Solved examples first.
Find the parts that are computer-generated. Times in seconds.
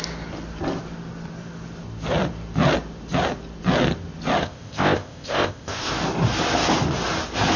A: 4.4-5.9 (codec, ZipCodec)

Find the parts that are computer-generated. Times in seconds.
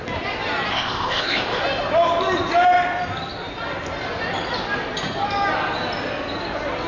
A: 0.7-1.6 (codec, ZipCodec)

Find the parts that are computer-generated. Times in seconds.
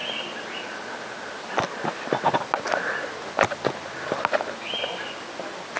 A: none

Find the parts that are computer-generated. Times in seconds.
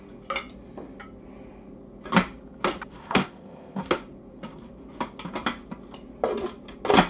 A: 3.0-3.8 (codec, ZipCodec)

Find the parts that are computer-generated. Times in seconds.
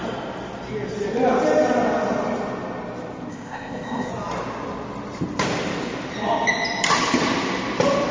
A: 3.3-4.1 (codec, ZipCodec)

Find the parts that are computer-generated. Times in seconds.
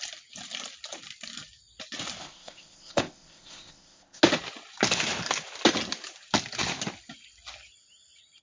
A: 2.2-4.2 (codec, ZipCodec)